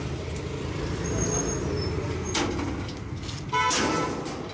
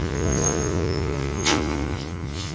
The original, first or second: first